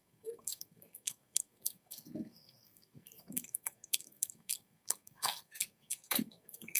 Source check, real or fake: fake